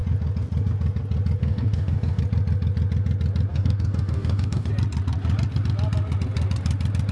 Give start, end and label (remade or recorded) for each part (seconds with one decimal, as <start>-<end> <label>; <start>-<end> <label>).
0.0-1.4 recorded; 1.4-2.2 remade; 2.2-3.5 recorded; 3.5-4.7 remade; 4.7-7.1 recorded